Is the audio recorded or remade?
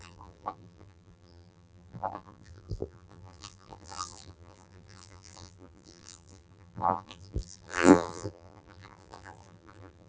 remade